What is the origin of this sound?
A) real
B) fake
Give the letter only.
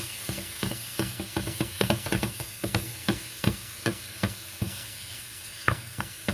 B